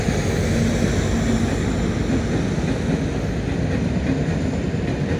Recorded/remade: recorded